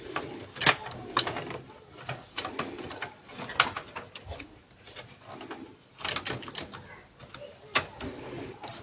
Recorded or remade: recorded